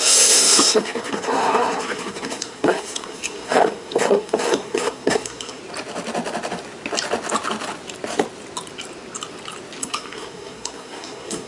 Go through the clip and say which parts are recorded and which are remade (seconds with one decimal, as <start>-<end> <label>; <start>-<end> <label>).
0.0-5.6 remade; 5.6-9.8 recorded; 9.8-11.5 remade